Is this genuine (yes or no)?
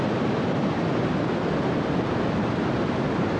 yes